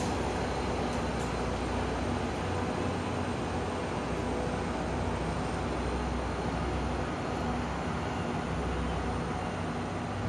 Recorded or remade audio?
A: recorded